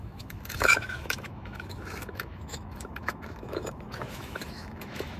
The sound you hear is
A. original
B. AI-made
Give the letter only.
B